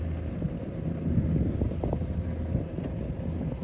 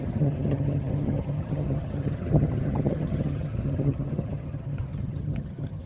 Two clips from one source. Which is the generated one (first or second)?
second